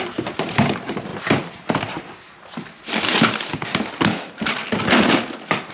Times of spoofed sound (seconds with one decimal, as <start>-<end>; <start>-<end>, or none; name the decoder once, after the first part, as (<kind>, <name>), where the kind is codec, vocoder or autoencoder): none